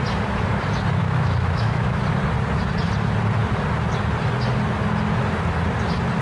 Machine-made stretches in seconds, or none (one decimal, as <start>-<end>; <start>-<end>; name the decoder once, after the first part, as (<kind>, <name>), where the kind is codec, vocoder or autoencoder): 1.0-2.0 (autoencoder, DAC-VAE)